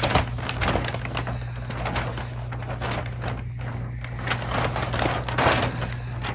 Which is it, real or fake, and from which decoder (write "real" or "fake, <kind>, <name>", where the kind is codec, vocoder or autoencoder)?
real